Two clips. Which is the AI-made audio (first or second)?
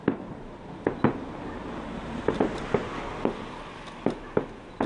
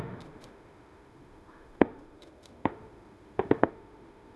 second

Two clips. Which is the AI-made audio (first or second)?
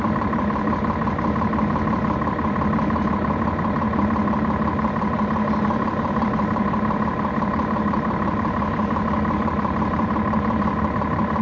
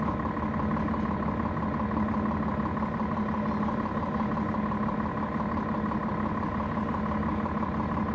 first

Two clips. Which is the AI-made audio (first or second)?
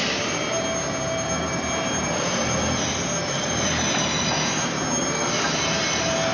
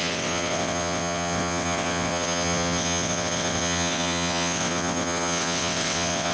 second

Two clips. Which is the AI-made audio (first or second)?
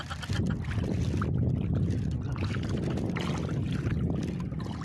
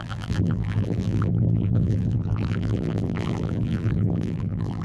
second